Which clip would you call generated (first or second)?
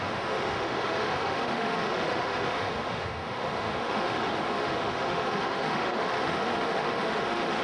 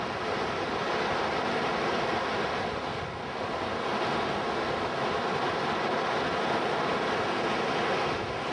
first